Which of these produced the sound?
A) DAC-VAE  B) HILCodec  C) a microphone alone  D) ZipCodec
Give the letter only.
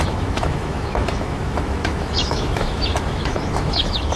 A